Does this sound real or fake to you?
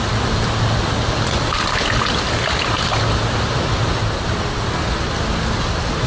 real